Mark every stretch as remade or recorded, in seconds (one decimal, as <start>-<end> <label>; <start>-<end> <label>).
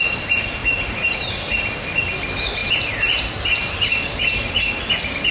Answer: 0.0-0.6 recorded; 0.6-1.3 remade; 1.3-2.6 recorded; 2.6-4.6 remade; 4.6-5.3 recorded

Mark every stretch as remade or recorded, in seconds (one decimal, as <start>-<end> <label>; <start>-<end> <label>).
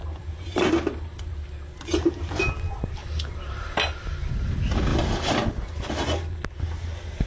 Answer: 0.0-3.0 recorded; 3.0-4.3 remade; 4.3-7.3 recorded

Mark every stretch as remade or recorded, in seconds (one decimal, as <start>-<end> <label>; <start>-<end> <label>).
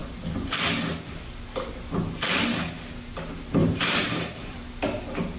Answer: 0.0-3.6 recorded; 3.6-4.7 remade; 4.7-5.4 recorded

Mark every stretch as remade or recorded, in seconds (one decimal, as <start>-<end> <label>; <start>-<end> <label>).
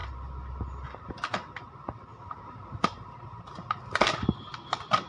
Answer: 0.0-2.1 recorded; 2.1-4.0 remade; 4.0-5.1 recorded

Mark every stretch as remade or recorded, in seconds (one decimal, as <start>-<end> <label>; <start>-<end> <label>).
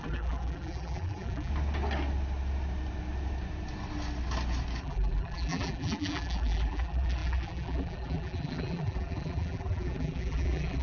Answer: 0.0-1.5 remade; 1.5-4.8 recorded; 4.8-10.8 remade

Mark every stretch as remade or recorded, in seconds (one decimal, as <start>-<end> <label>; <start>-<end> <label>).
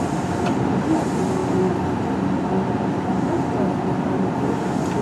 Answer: 0.0-5.0 recorded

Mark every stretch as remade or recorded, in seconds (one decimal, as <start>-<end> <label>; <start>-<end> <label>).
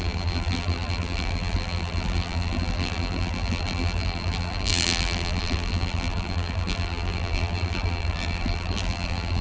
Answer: 0.0-9.4 remade